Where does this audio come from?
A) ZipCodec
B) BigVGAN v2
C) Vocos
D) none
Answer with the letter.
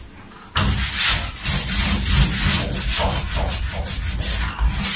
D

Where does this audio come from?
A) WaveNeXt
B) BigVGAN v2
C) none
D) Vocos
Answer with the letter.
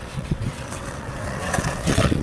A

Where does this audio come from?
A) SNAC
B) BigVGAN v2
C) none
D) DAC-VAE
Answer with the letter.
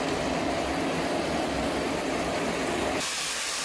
C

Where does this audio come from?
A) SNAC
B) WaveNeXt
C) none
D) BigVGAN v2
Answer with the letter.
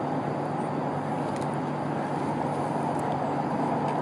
C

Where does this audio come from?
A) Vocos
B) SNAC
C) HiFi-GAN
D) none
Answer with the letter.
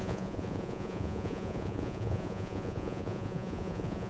A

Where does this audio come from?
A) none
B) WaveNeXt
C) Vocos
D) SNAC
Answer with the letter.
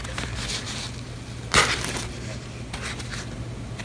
A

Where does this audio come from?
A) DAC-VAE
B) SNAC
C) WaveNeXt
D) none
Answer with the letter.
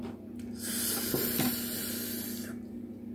D